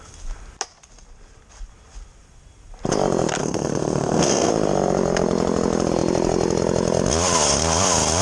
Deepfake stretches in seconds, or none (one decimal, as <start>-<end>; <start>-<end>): 3.4-4.5